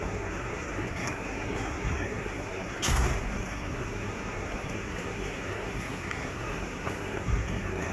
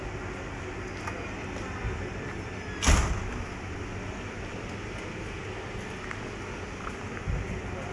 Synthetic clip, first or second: first